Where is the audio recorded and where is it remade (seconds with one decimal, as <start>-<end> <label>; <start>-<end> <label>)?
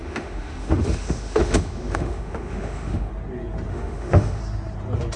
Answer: 0.0-3.1 remade; 3.1-3.7 recorded; 3.7-4.4 remade; 4.4-5.2 recorded